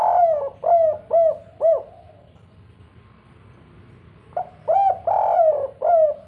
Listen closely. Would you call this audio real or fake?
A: real